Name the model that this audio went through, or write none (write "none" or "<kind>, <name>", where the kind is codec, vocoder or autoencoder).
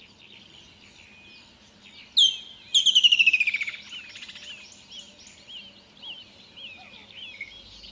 none